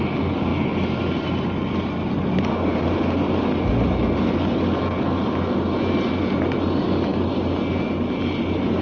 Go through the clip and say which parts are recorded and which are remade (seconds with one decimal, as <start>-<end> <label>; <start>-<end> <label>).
0.0-8.8 recorded